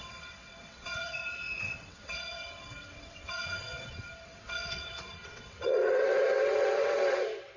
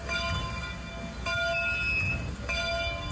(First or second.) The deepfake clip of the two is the first